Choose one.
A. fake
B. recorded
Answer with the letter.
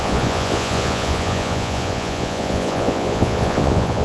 A